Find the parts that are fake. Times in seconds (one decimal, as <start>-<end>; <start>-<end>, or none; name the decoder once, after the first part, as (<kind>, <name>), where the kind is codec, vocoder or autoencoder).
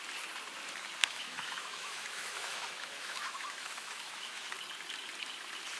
1.0-4.5 (autoencoder, DAC-VAE)